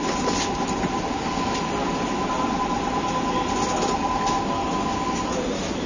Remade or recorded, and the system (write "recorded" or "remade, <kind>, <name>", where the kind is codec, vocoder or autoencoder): recorded